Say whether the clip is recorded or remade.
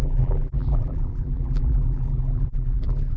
remade